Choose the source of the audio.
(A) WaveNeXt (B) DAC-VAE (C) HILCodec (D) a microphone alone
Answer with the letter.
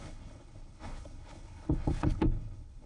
C